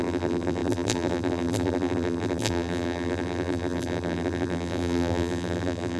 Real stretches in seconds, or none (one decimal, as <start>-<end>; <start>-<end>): none